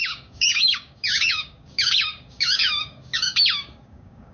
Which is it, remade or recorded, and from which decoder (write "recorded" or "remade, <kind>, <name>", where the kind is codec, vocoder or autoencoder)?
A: remade, codec, DAC